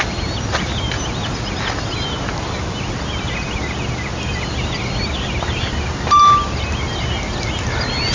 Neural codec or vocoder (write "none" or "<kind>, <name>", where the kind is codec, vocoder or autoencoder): none